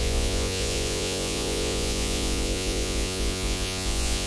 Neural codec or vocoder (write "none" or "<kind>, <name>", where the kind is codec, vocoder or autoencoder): vocoder, Vocos